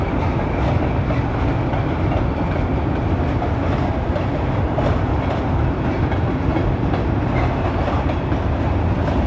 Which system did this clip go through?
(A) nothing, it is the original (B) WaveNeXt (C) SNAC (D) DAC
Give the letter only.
A